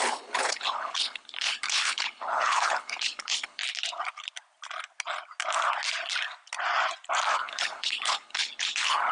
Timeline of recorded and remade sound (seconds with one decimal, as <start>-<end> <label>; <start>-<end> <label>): 0.0-3.6 remade; 3.6-7.3 recorded; 7.3-9.1 remade